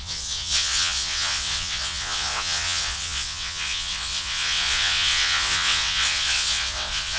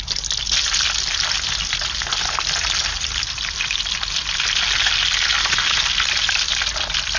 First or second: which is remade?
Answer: first